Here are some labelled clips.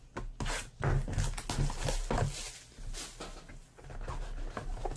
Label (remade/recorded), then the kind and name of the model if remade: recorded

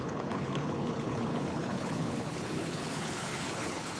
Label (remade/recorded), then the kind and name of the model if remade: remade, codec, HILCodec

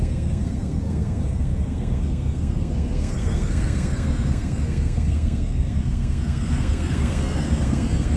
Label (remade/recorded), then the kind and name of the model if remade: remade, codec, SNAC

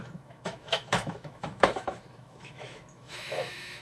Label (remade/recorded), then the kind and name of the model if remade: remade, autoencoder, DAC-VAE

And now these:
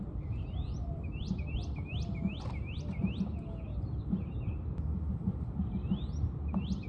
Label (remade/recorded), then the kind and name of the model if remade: recorded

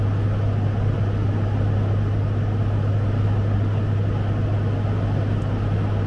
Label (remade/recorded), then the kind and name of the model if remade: recorded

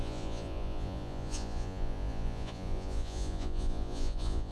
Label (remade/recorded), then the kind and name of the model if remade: remade, vocoder, Vocos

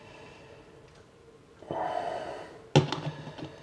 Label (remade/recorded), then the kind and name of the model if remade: recorded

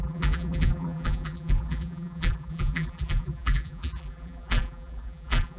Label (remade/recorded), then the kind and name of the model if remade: remade, vocoder, BigVGAN v2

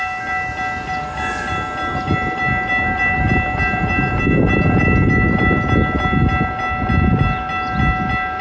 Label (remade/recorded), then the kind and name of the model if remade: recorded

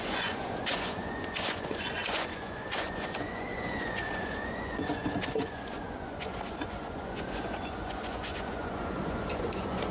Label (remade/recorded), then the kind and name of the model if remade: remade, vocoder, Vocos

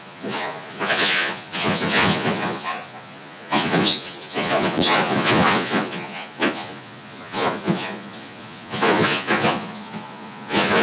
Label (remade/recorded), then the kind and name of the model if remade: remade, vocoder, Vocos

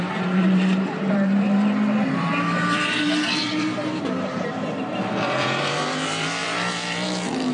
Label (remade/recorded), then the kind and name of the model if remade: remade, vocoder, BigVGAN v2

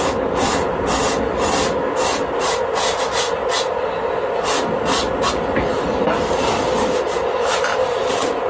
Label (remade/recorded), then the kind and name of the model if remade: recorded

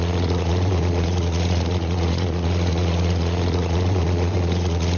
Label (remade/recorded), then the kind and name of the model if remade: remade, vocoder, Vocos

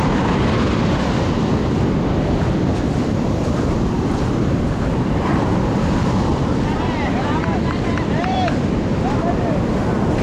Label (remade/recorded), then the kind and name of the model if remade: recorded